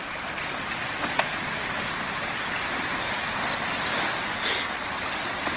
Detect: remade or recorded recorded